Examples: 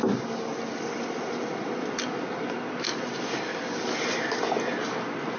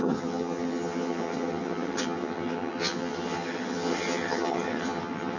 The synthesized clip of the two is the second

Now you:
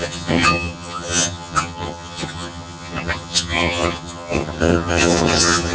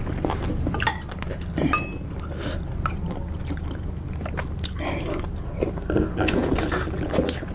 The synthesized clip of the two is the first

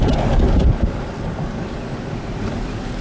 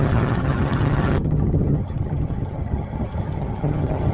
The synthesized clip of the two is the second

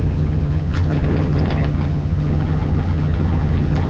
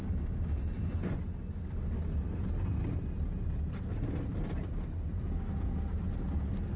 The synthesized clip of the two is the first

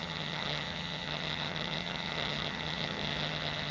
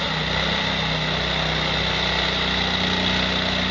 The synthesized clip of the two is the first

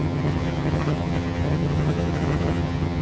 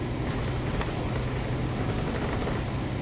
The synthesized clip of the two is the first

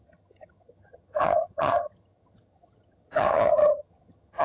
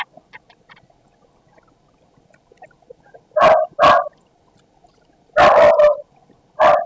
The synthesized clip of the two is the first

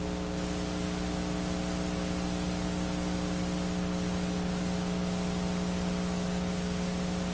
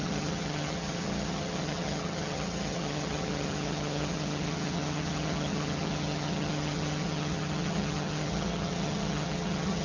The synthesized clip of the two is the second